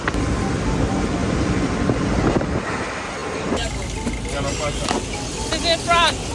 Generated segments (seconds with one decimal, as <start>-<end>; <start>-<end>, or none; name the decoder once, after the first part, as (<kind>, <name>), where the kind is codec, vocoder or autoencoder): 1.2-2.0 (vocoder, BigVGAN v2)